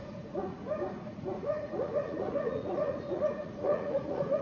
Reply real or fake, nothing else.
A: fake